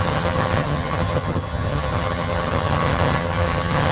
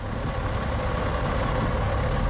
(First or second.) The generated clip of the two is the first